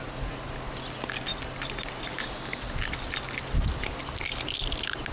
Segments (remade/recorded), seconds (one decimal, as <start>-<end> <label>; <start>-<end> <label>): 0.0-5.1 recorded